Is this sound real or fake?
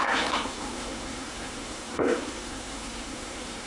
fake